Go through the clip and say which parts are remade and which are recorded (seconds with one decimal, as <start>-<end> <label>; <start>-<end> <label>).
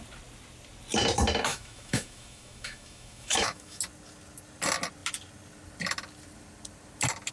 0.0-1.5 recorded; 1.5-3.8 remade; 3.8-7.3 recorded